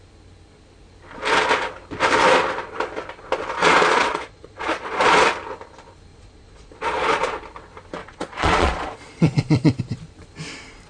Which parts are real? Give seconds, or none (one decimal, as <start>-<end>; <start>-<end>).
0.0-3.6; 5.1-6.1; 7.2-8.0; 9.8-10.9